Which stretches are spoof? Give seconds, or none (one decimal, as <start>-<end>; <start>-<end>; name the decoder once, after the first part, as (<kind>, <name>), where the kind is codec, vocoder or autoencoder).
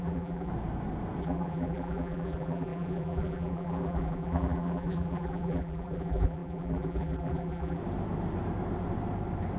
0.0-0.5 (vocoder, BigVGAN v2); 1.2-7.8